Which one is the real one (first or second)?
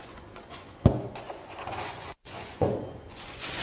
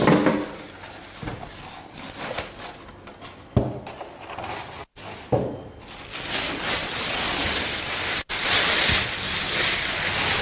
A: second